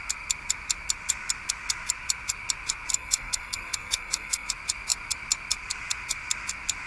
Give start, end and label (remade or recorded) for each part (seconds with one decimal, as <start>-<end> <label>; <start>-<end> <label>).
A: 0.0-2.9 recorded; 2.9-4.5 remade; 4.5-6.9 recorded